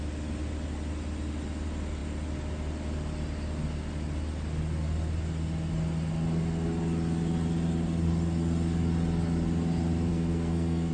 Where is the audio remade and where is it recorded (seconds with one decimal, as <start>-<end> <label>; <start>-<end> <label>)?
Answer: 0.0-10.1 recorded; 10.1-10.9 remade